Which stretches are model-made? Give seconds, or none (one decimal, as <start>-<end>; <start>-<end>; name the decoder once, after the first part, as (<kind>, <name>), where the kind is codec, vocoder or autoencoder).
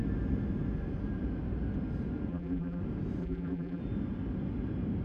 2.3-2.8 (vocoder, BigVGAN v2); 3.2-3.8